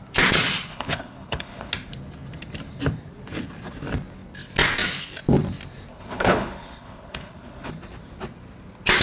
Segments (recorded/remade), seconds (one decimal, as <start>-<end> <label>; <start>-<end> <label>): 0.0-0.7 recorded; 0.7-1.7 remade; 1.7-5.9 recorded; 5.9-7.7 remade; 7.7-9.0 recorded